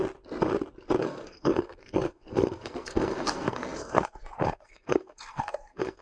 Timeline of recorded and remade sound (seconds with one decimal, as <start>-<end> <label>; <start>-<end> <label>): 0.0-1.0 recorded; 1.0-6.0 remade